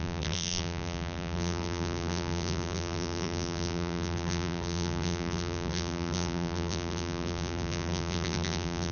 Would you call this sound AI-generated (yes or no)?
yes